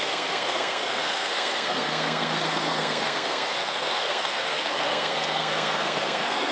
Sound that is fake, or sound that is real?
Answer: fake